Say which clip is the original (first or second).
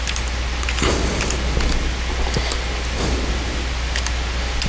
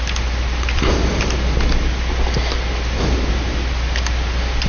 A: first